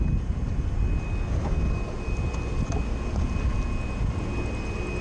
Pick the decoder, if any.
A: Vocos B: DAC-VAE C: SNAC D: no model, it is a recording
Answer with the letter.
D